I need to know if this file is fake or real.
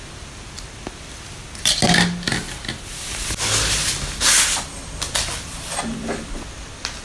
real